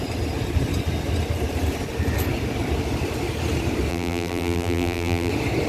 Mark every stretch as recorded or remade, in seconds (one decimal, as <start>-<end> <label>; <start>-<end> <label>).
0.0-3.9 recorded; 3.9-5.3 remade; 5.3-5.7 recorded